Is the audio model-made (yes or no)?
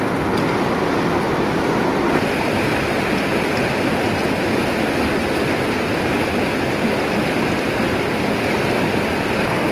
no